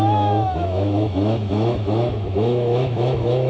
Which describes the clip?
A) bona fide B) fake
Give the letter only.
B